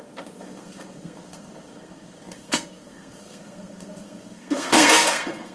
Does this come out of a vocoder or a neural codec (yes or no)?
yes